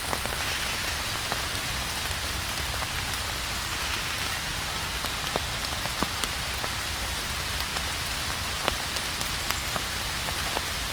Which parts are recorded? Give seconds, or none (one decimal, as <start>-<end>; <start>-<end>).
0.0-10.9